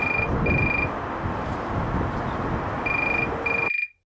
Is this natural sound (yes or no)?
yes